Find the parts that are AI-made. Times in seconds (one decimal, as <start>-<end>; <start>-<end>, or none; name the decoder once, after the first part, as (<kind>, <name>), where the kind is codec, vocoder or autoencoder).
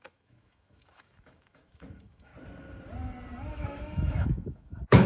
0.0-2.3 (autoencoder, DAC-VAE); 3.5-5.1